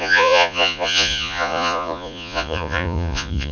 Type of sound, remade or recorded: remade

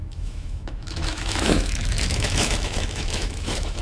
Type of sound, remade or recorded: remade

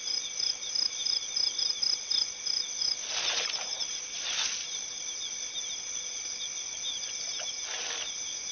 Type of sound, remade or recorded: recorded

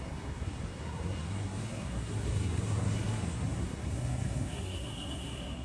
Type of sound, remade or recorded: remade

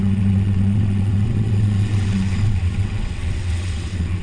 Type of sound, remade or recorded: remade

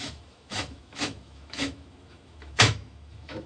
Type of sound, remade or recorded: remade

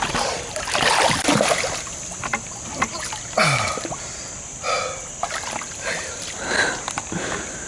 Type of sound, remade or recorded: recorded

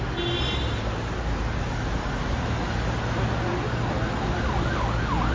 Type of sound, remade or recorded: recorded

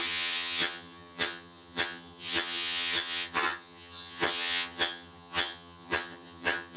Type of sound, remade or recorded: remade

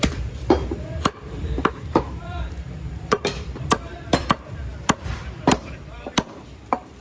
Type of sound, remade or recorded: remade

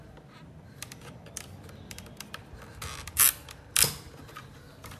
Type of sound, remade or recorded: recorded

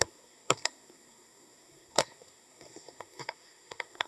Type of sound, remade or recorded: remade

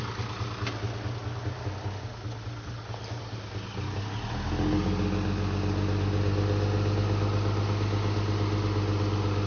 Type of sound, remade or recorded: recorded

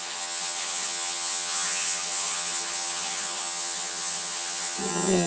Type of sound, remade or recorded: remade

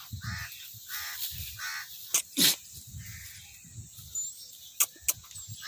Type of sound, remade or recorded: recorded